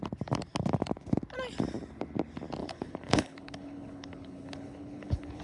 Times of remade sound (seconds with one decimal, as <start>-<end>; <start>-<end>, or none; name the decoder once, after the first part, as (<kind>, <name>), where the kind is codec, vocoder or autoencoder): 2.6-5.4 (codec, HILCodec)